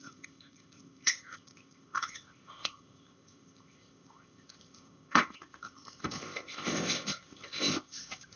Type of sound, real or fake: fake